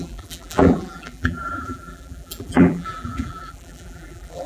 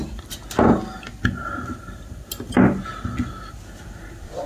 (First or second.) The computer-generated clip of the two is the first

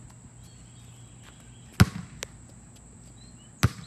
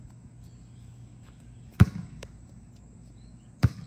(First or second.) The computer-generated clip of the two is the second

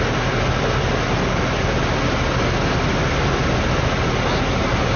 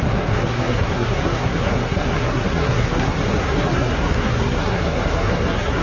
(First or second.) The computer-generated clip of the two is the second